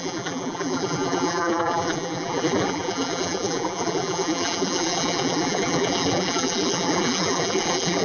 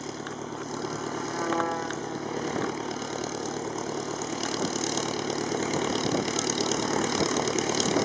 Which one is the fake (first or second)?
first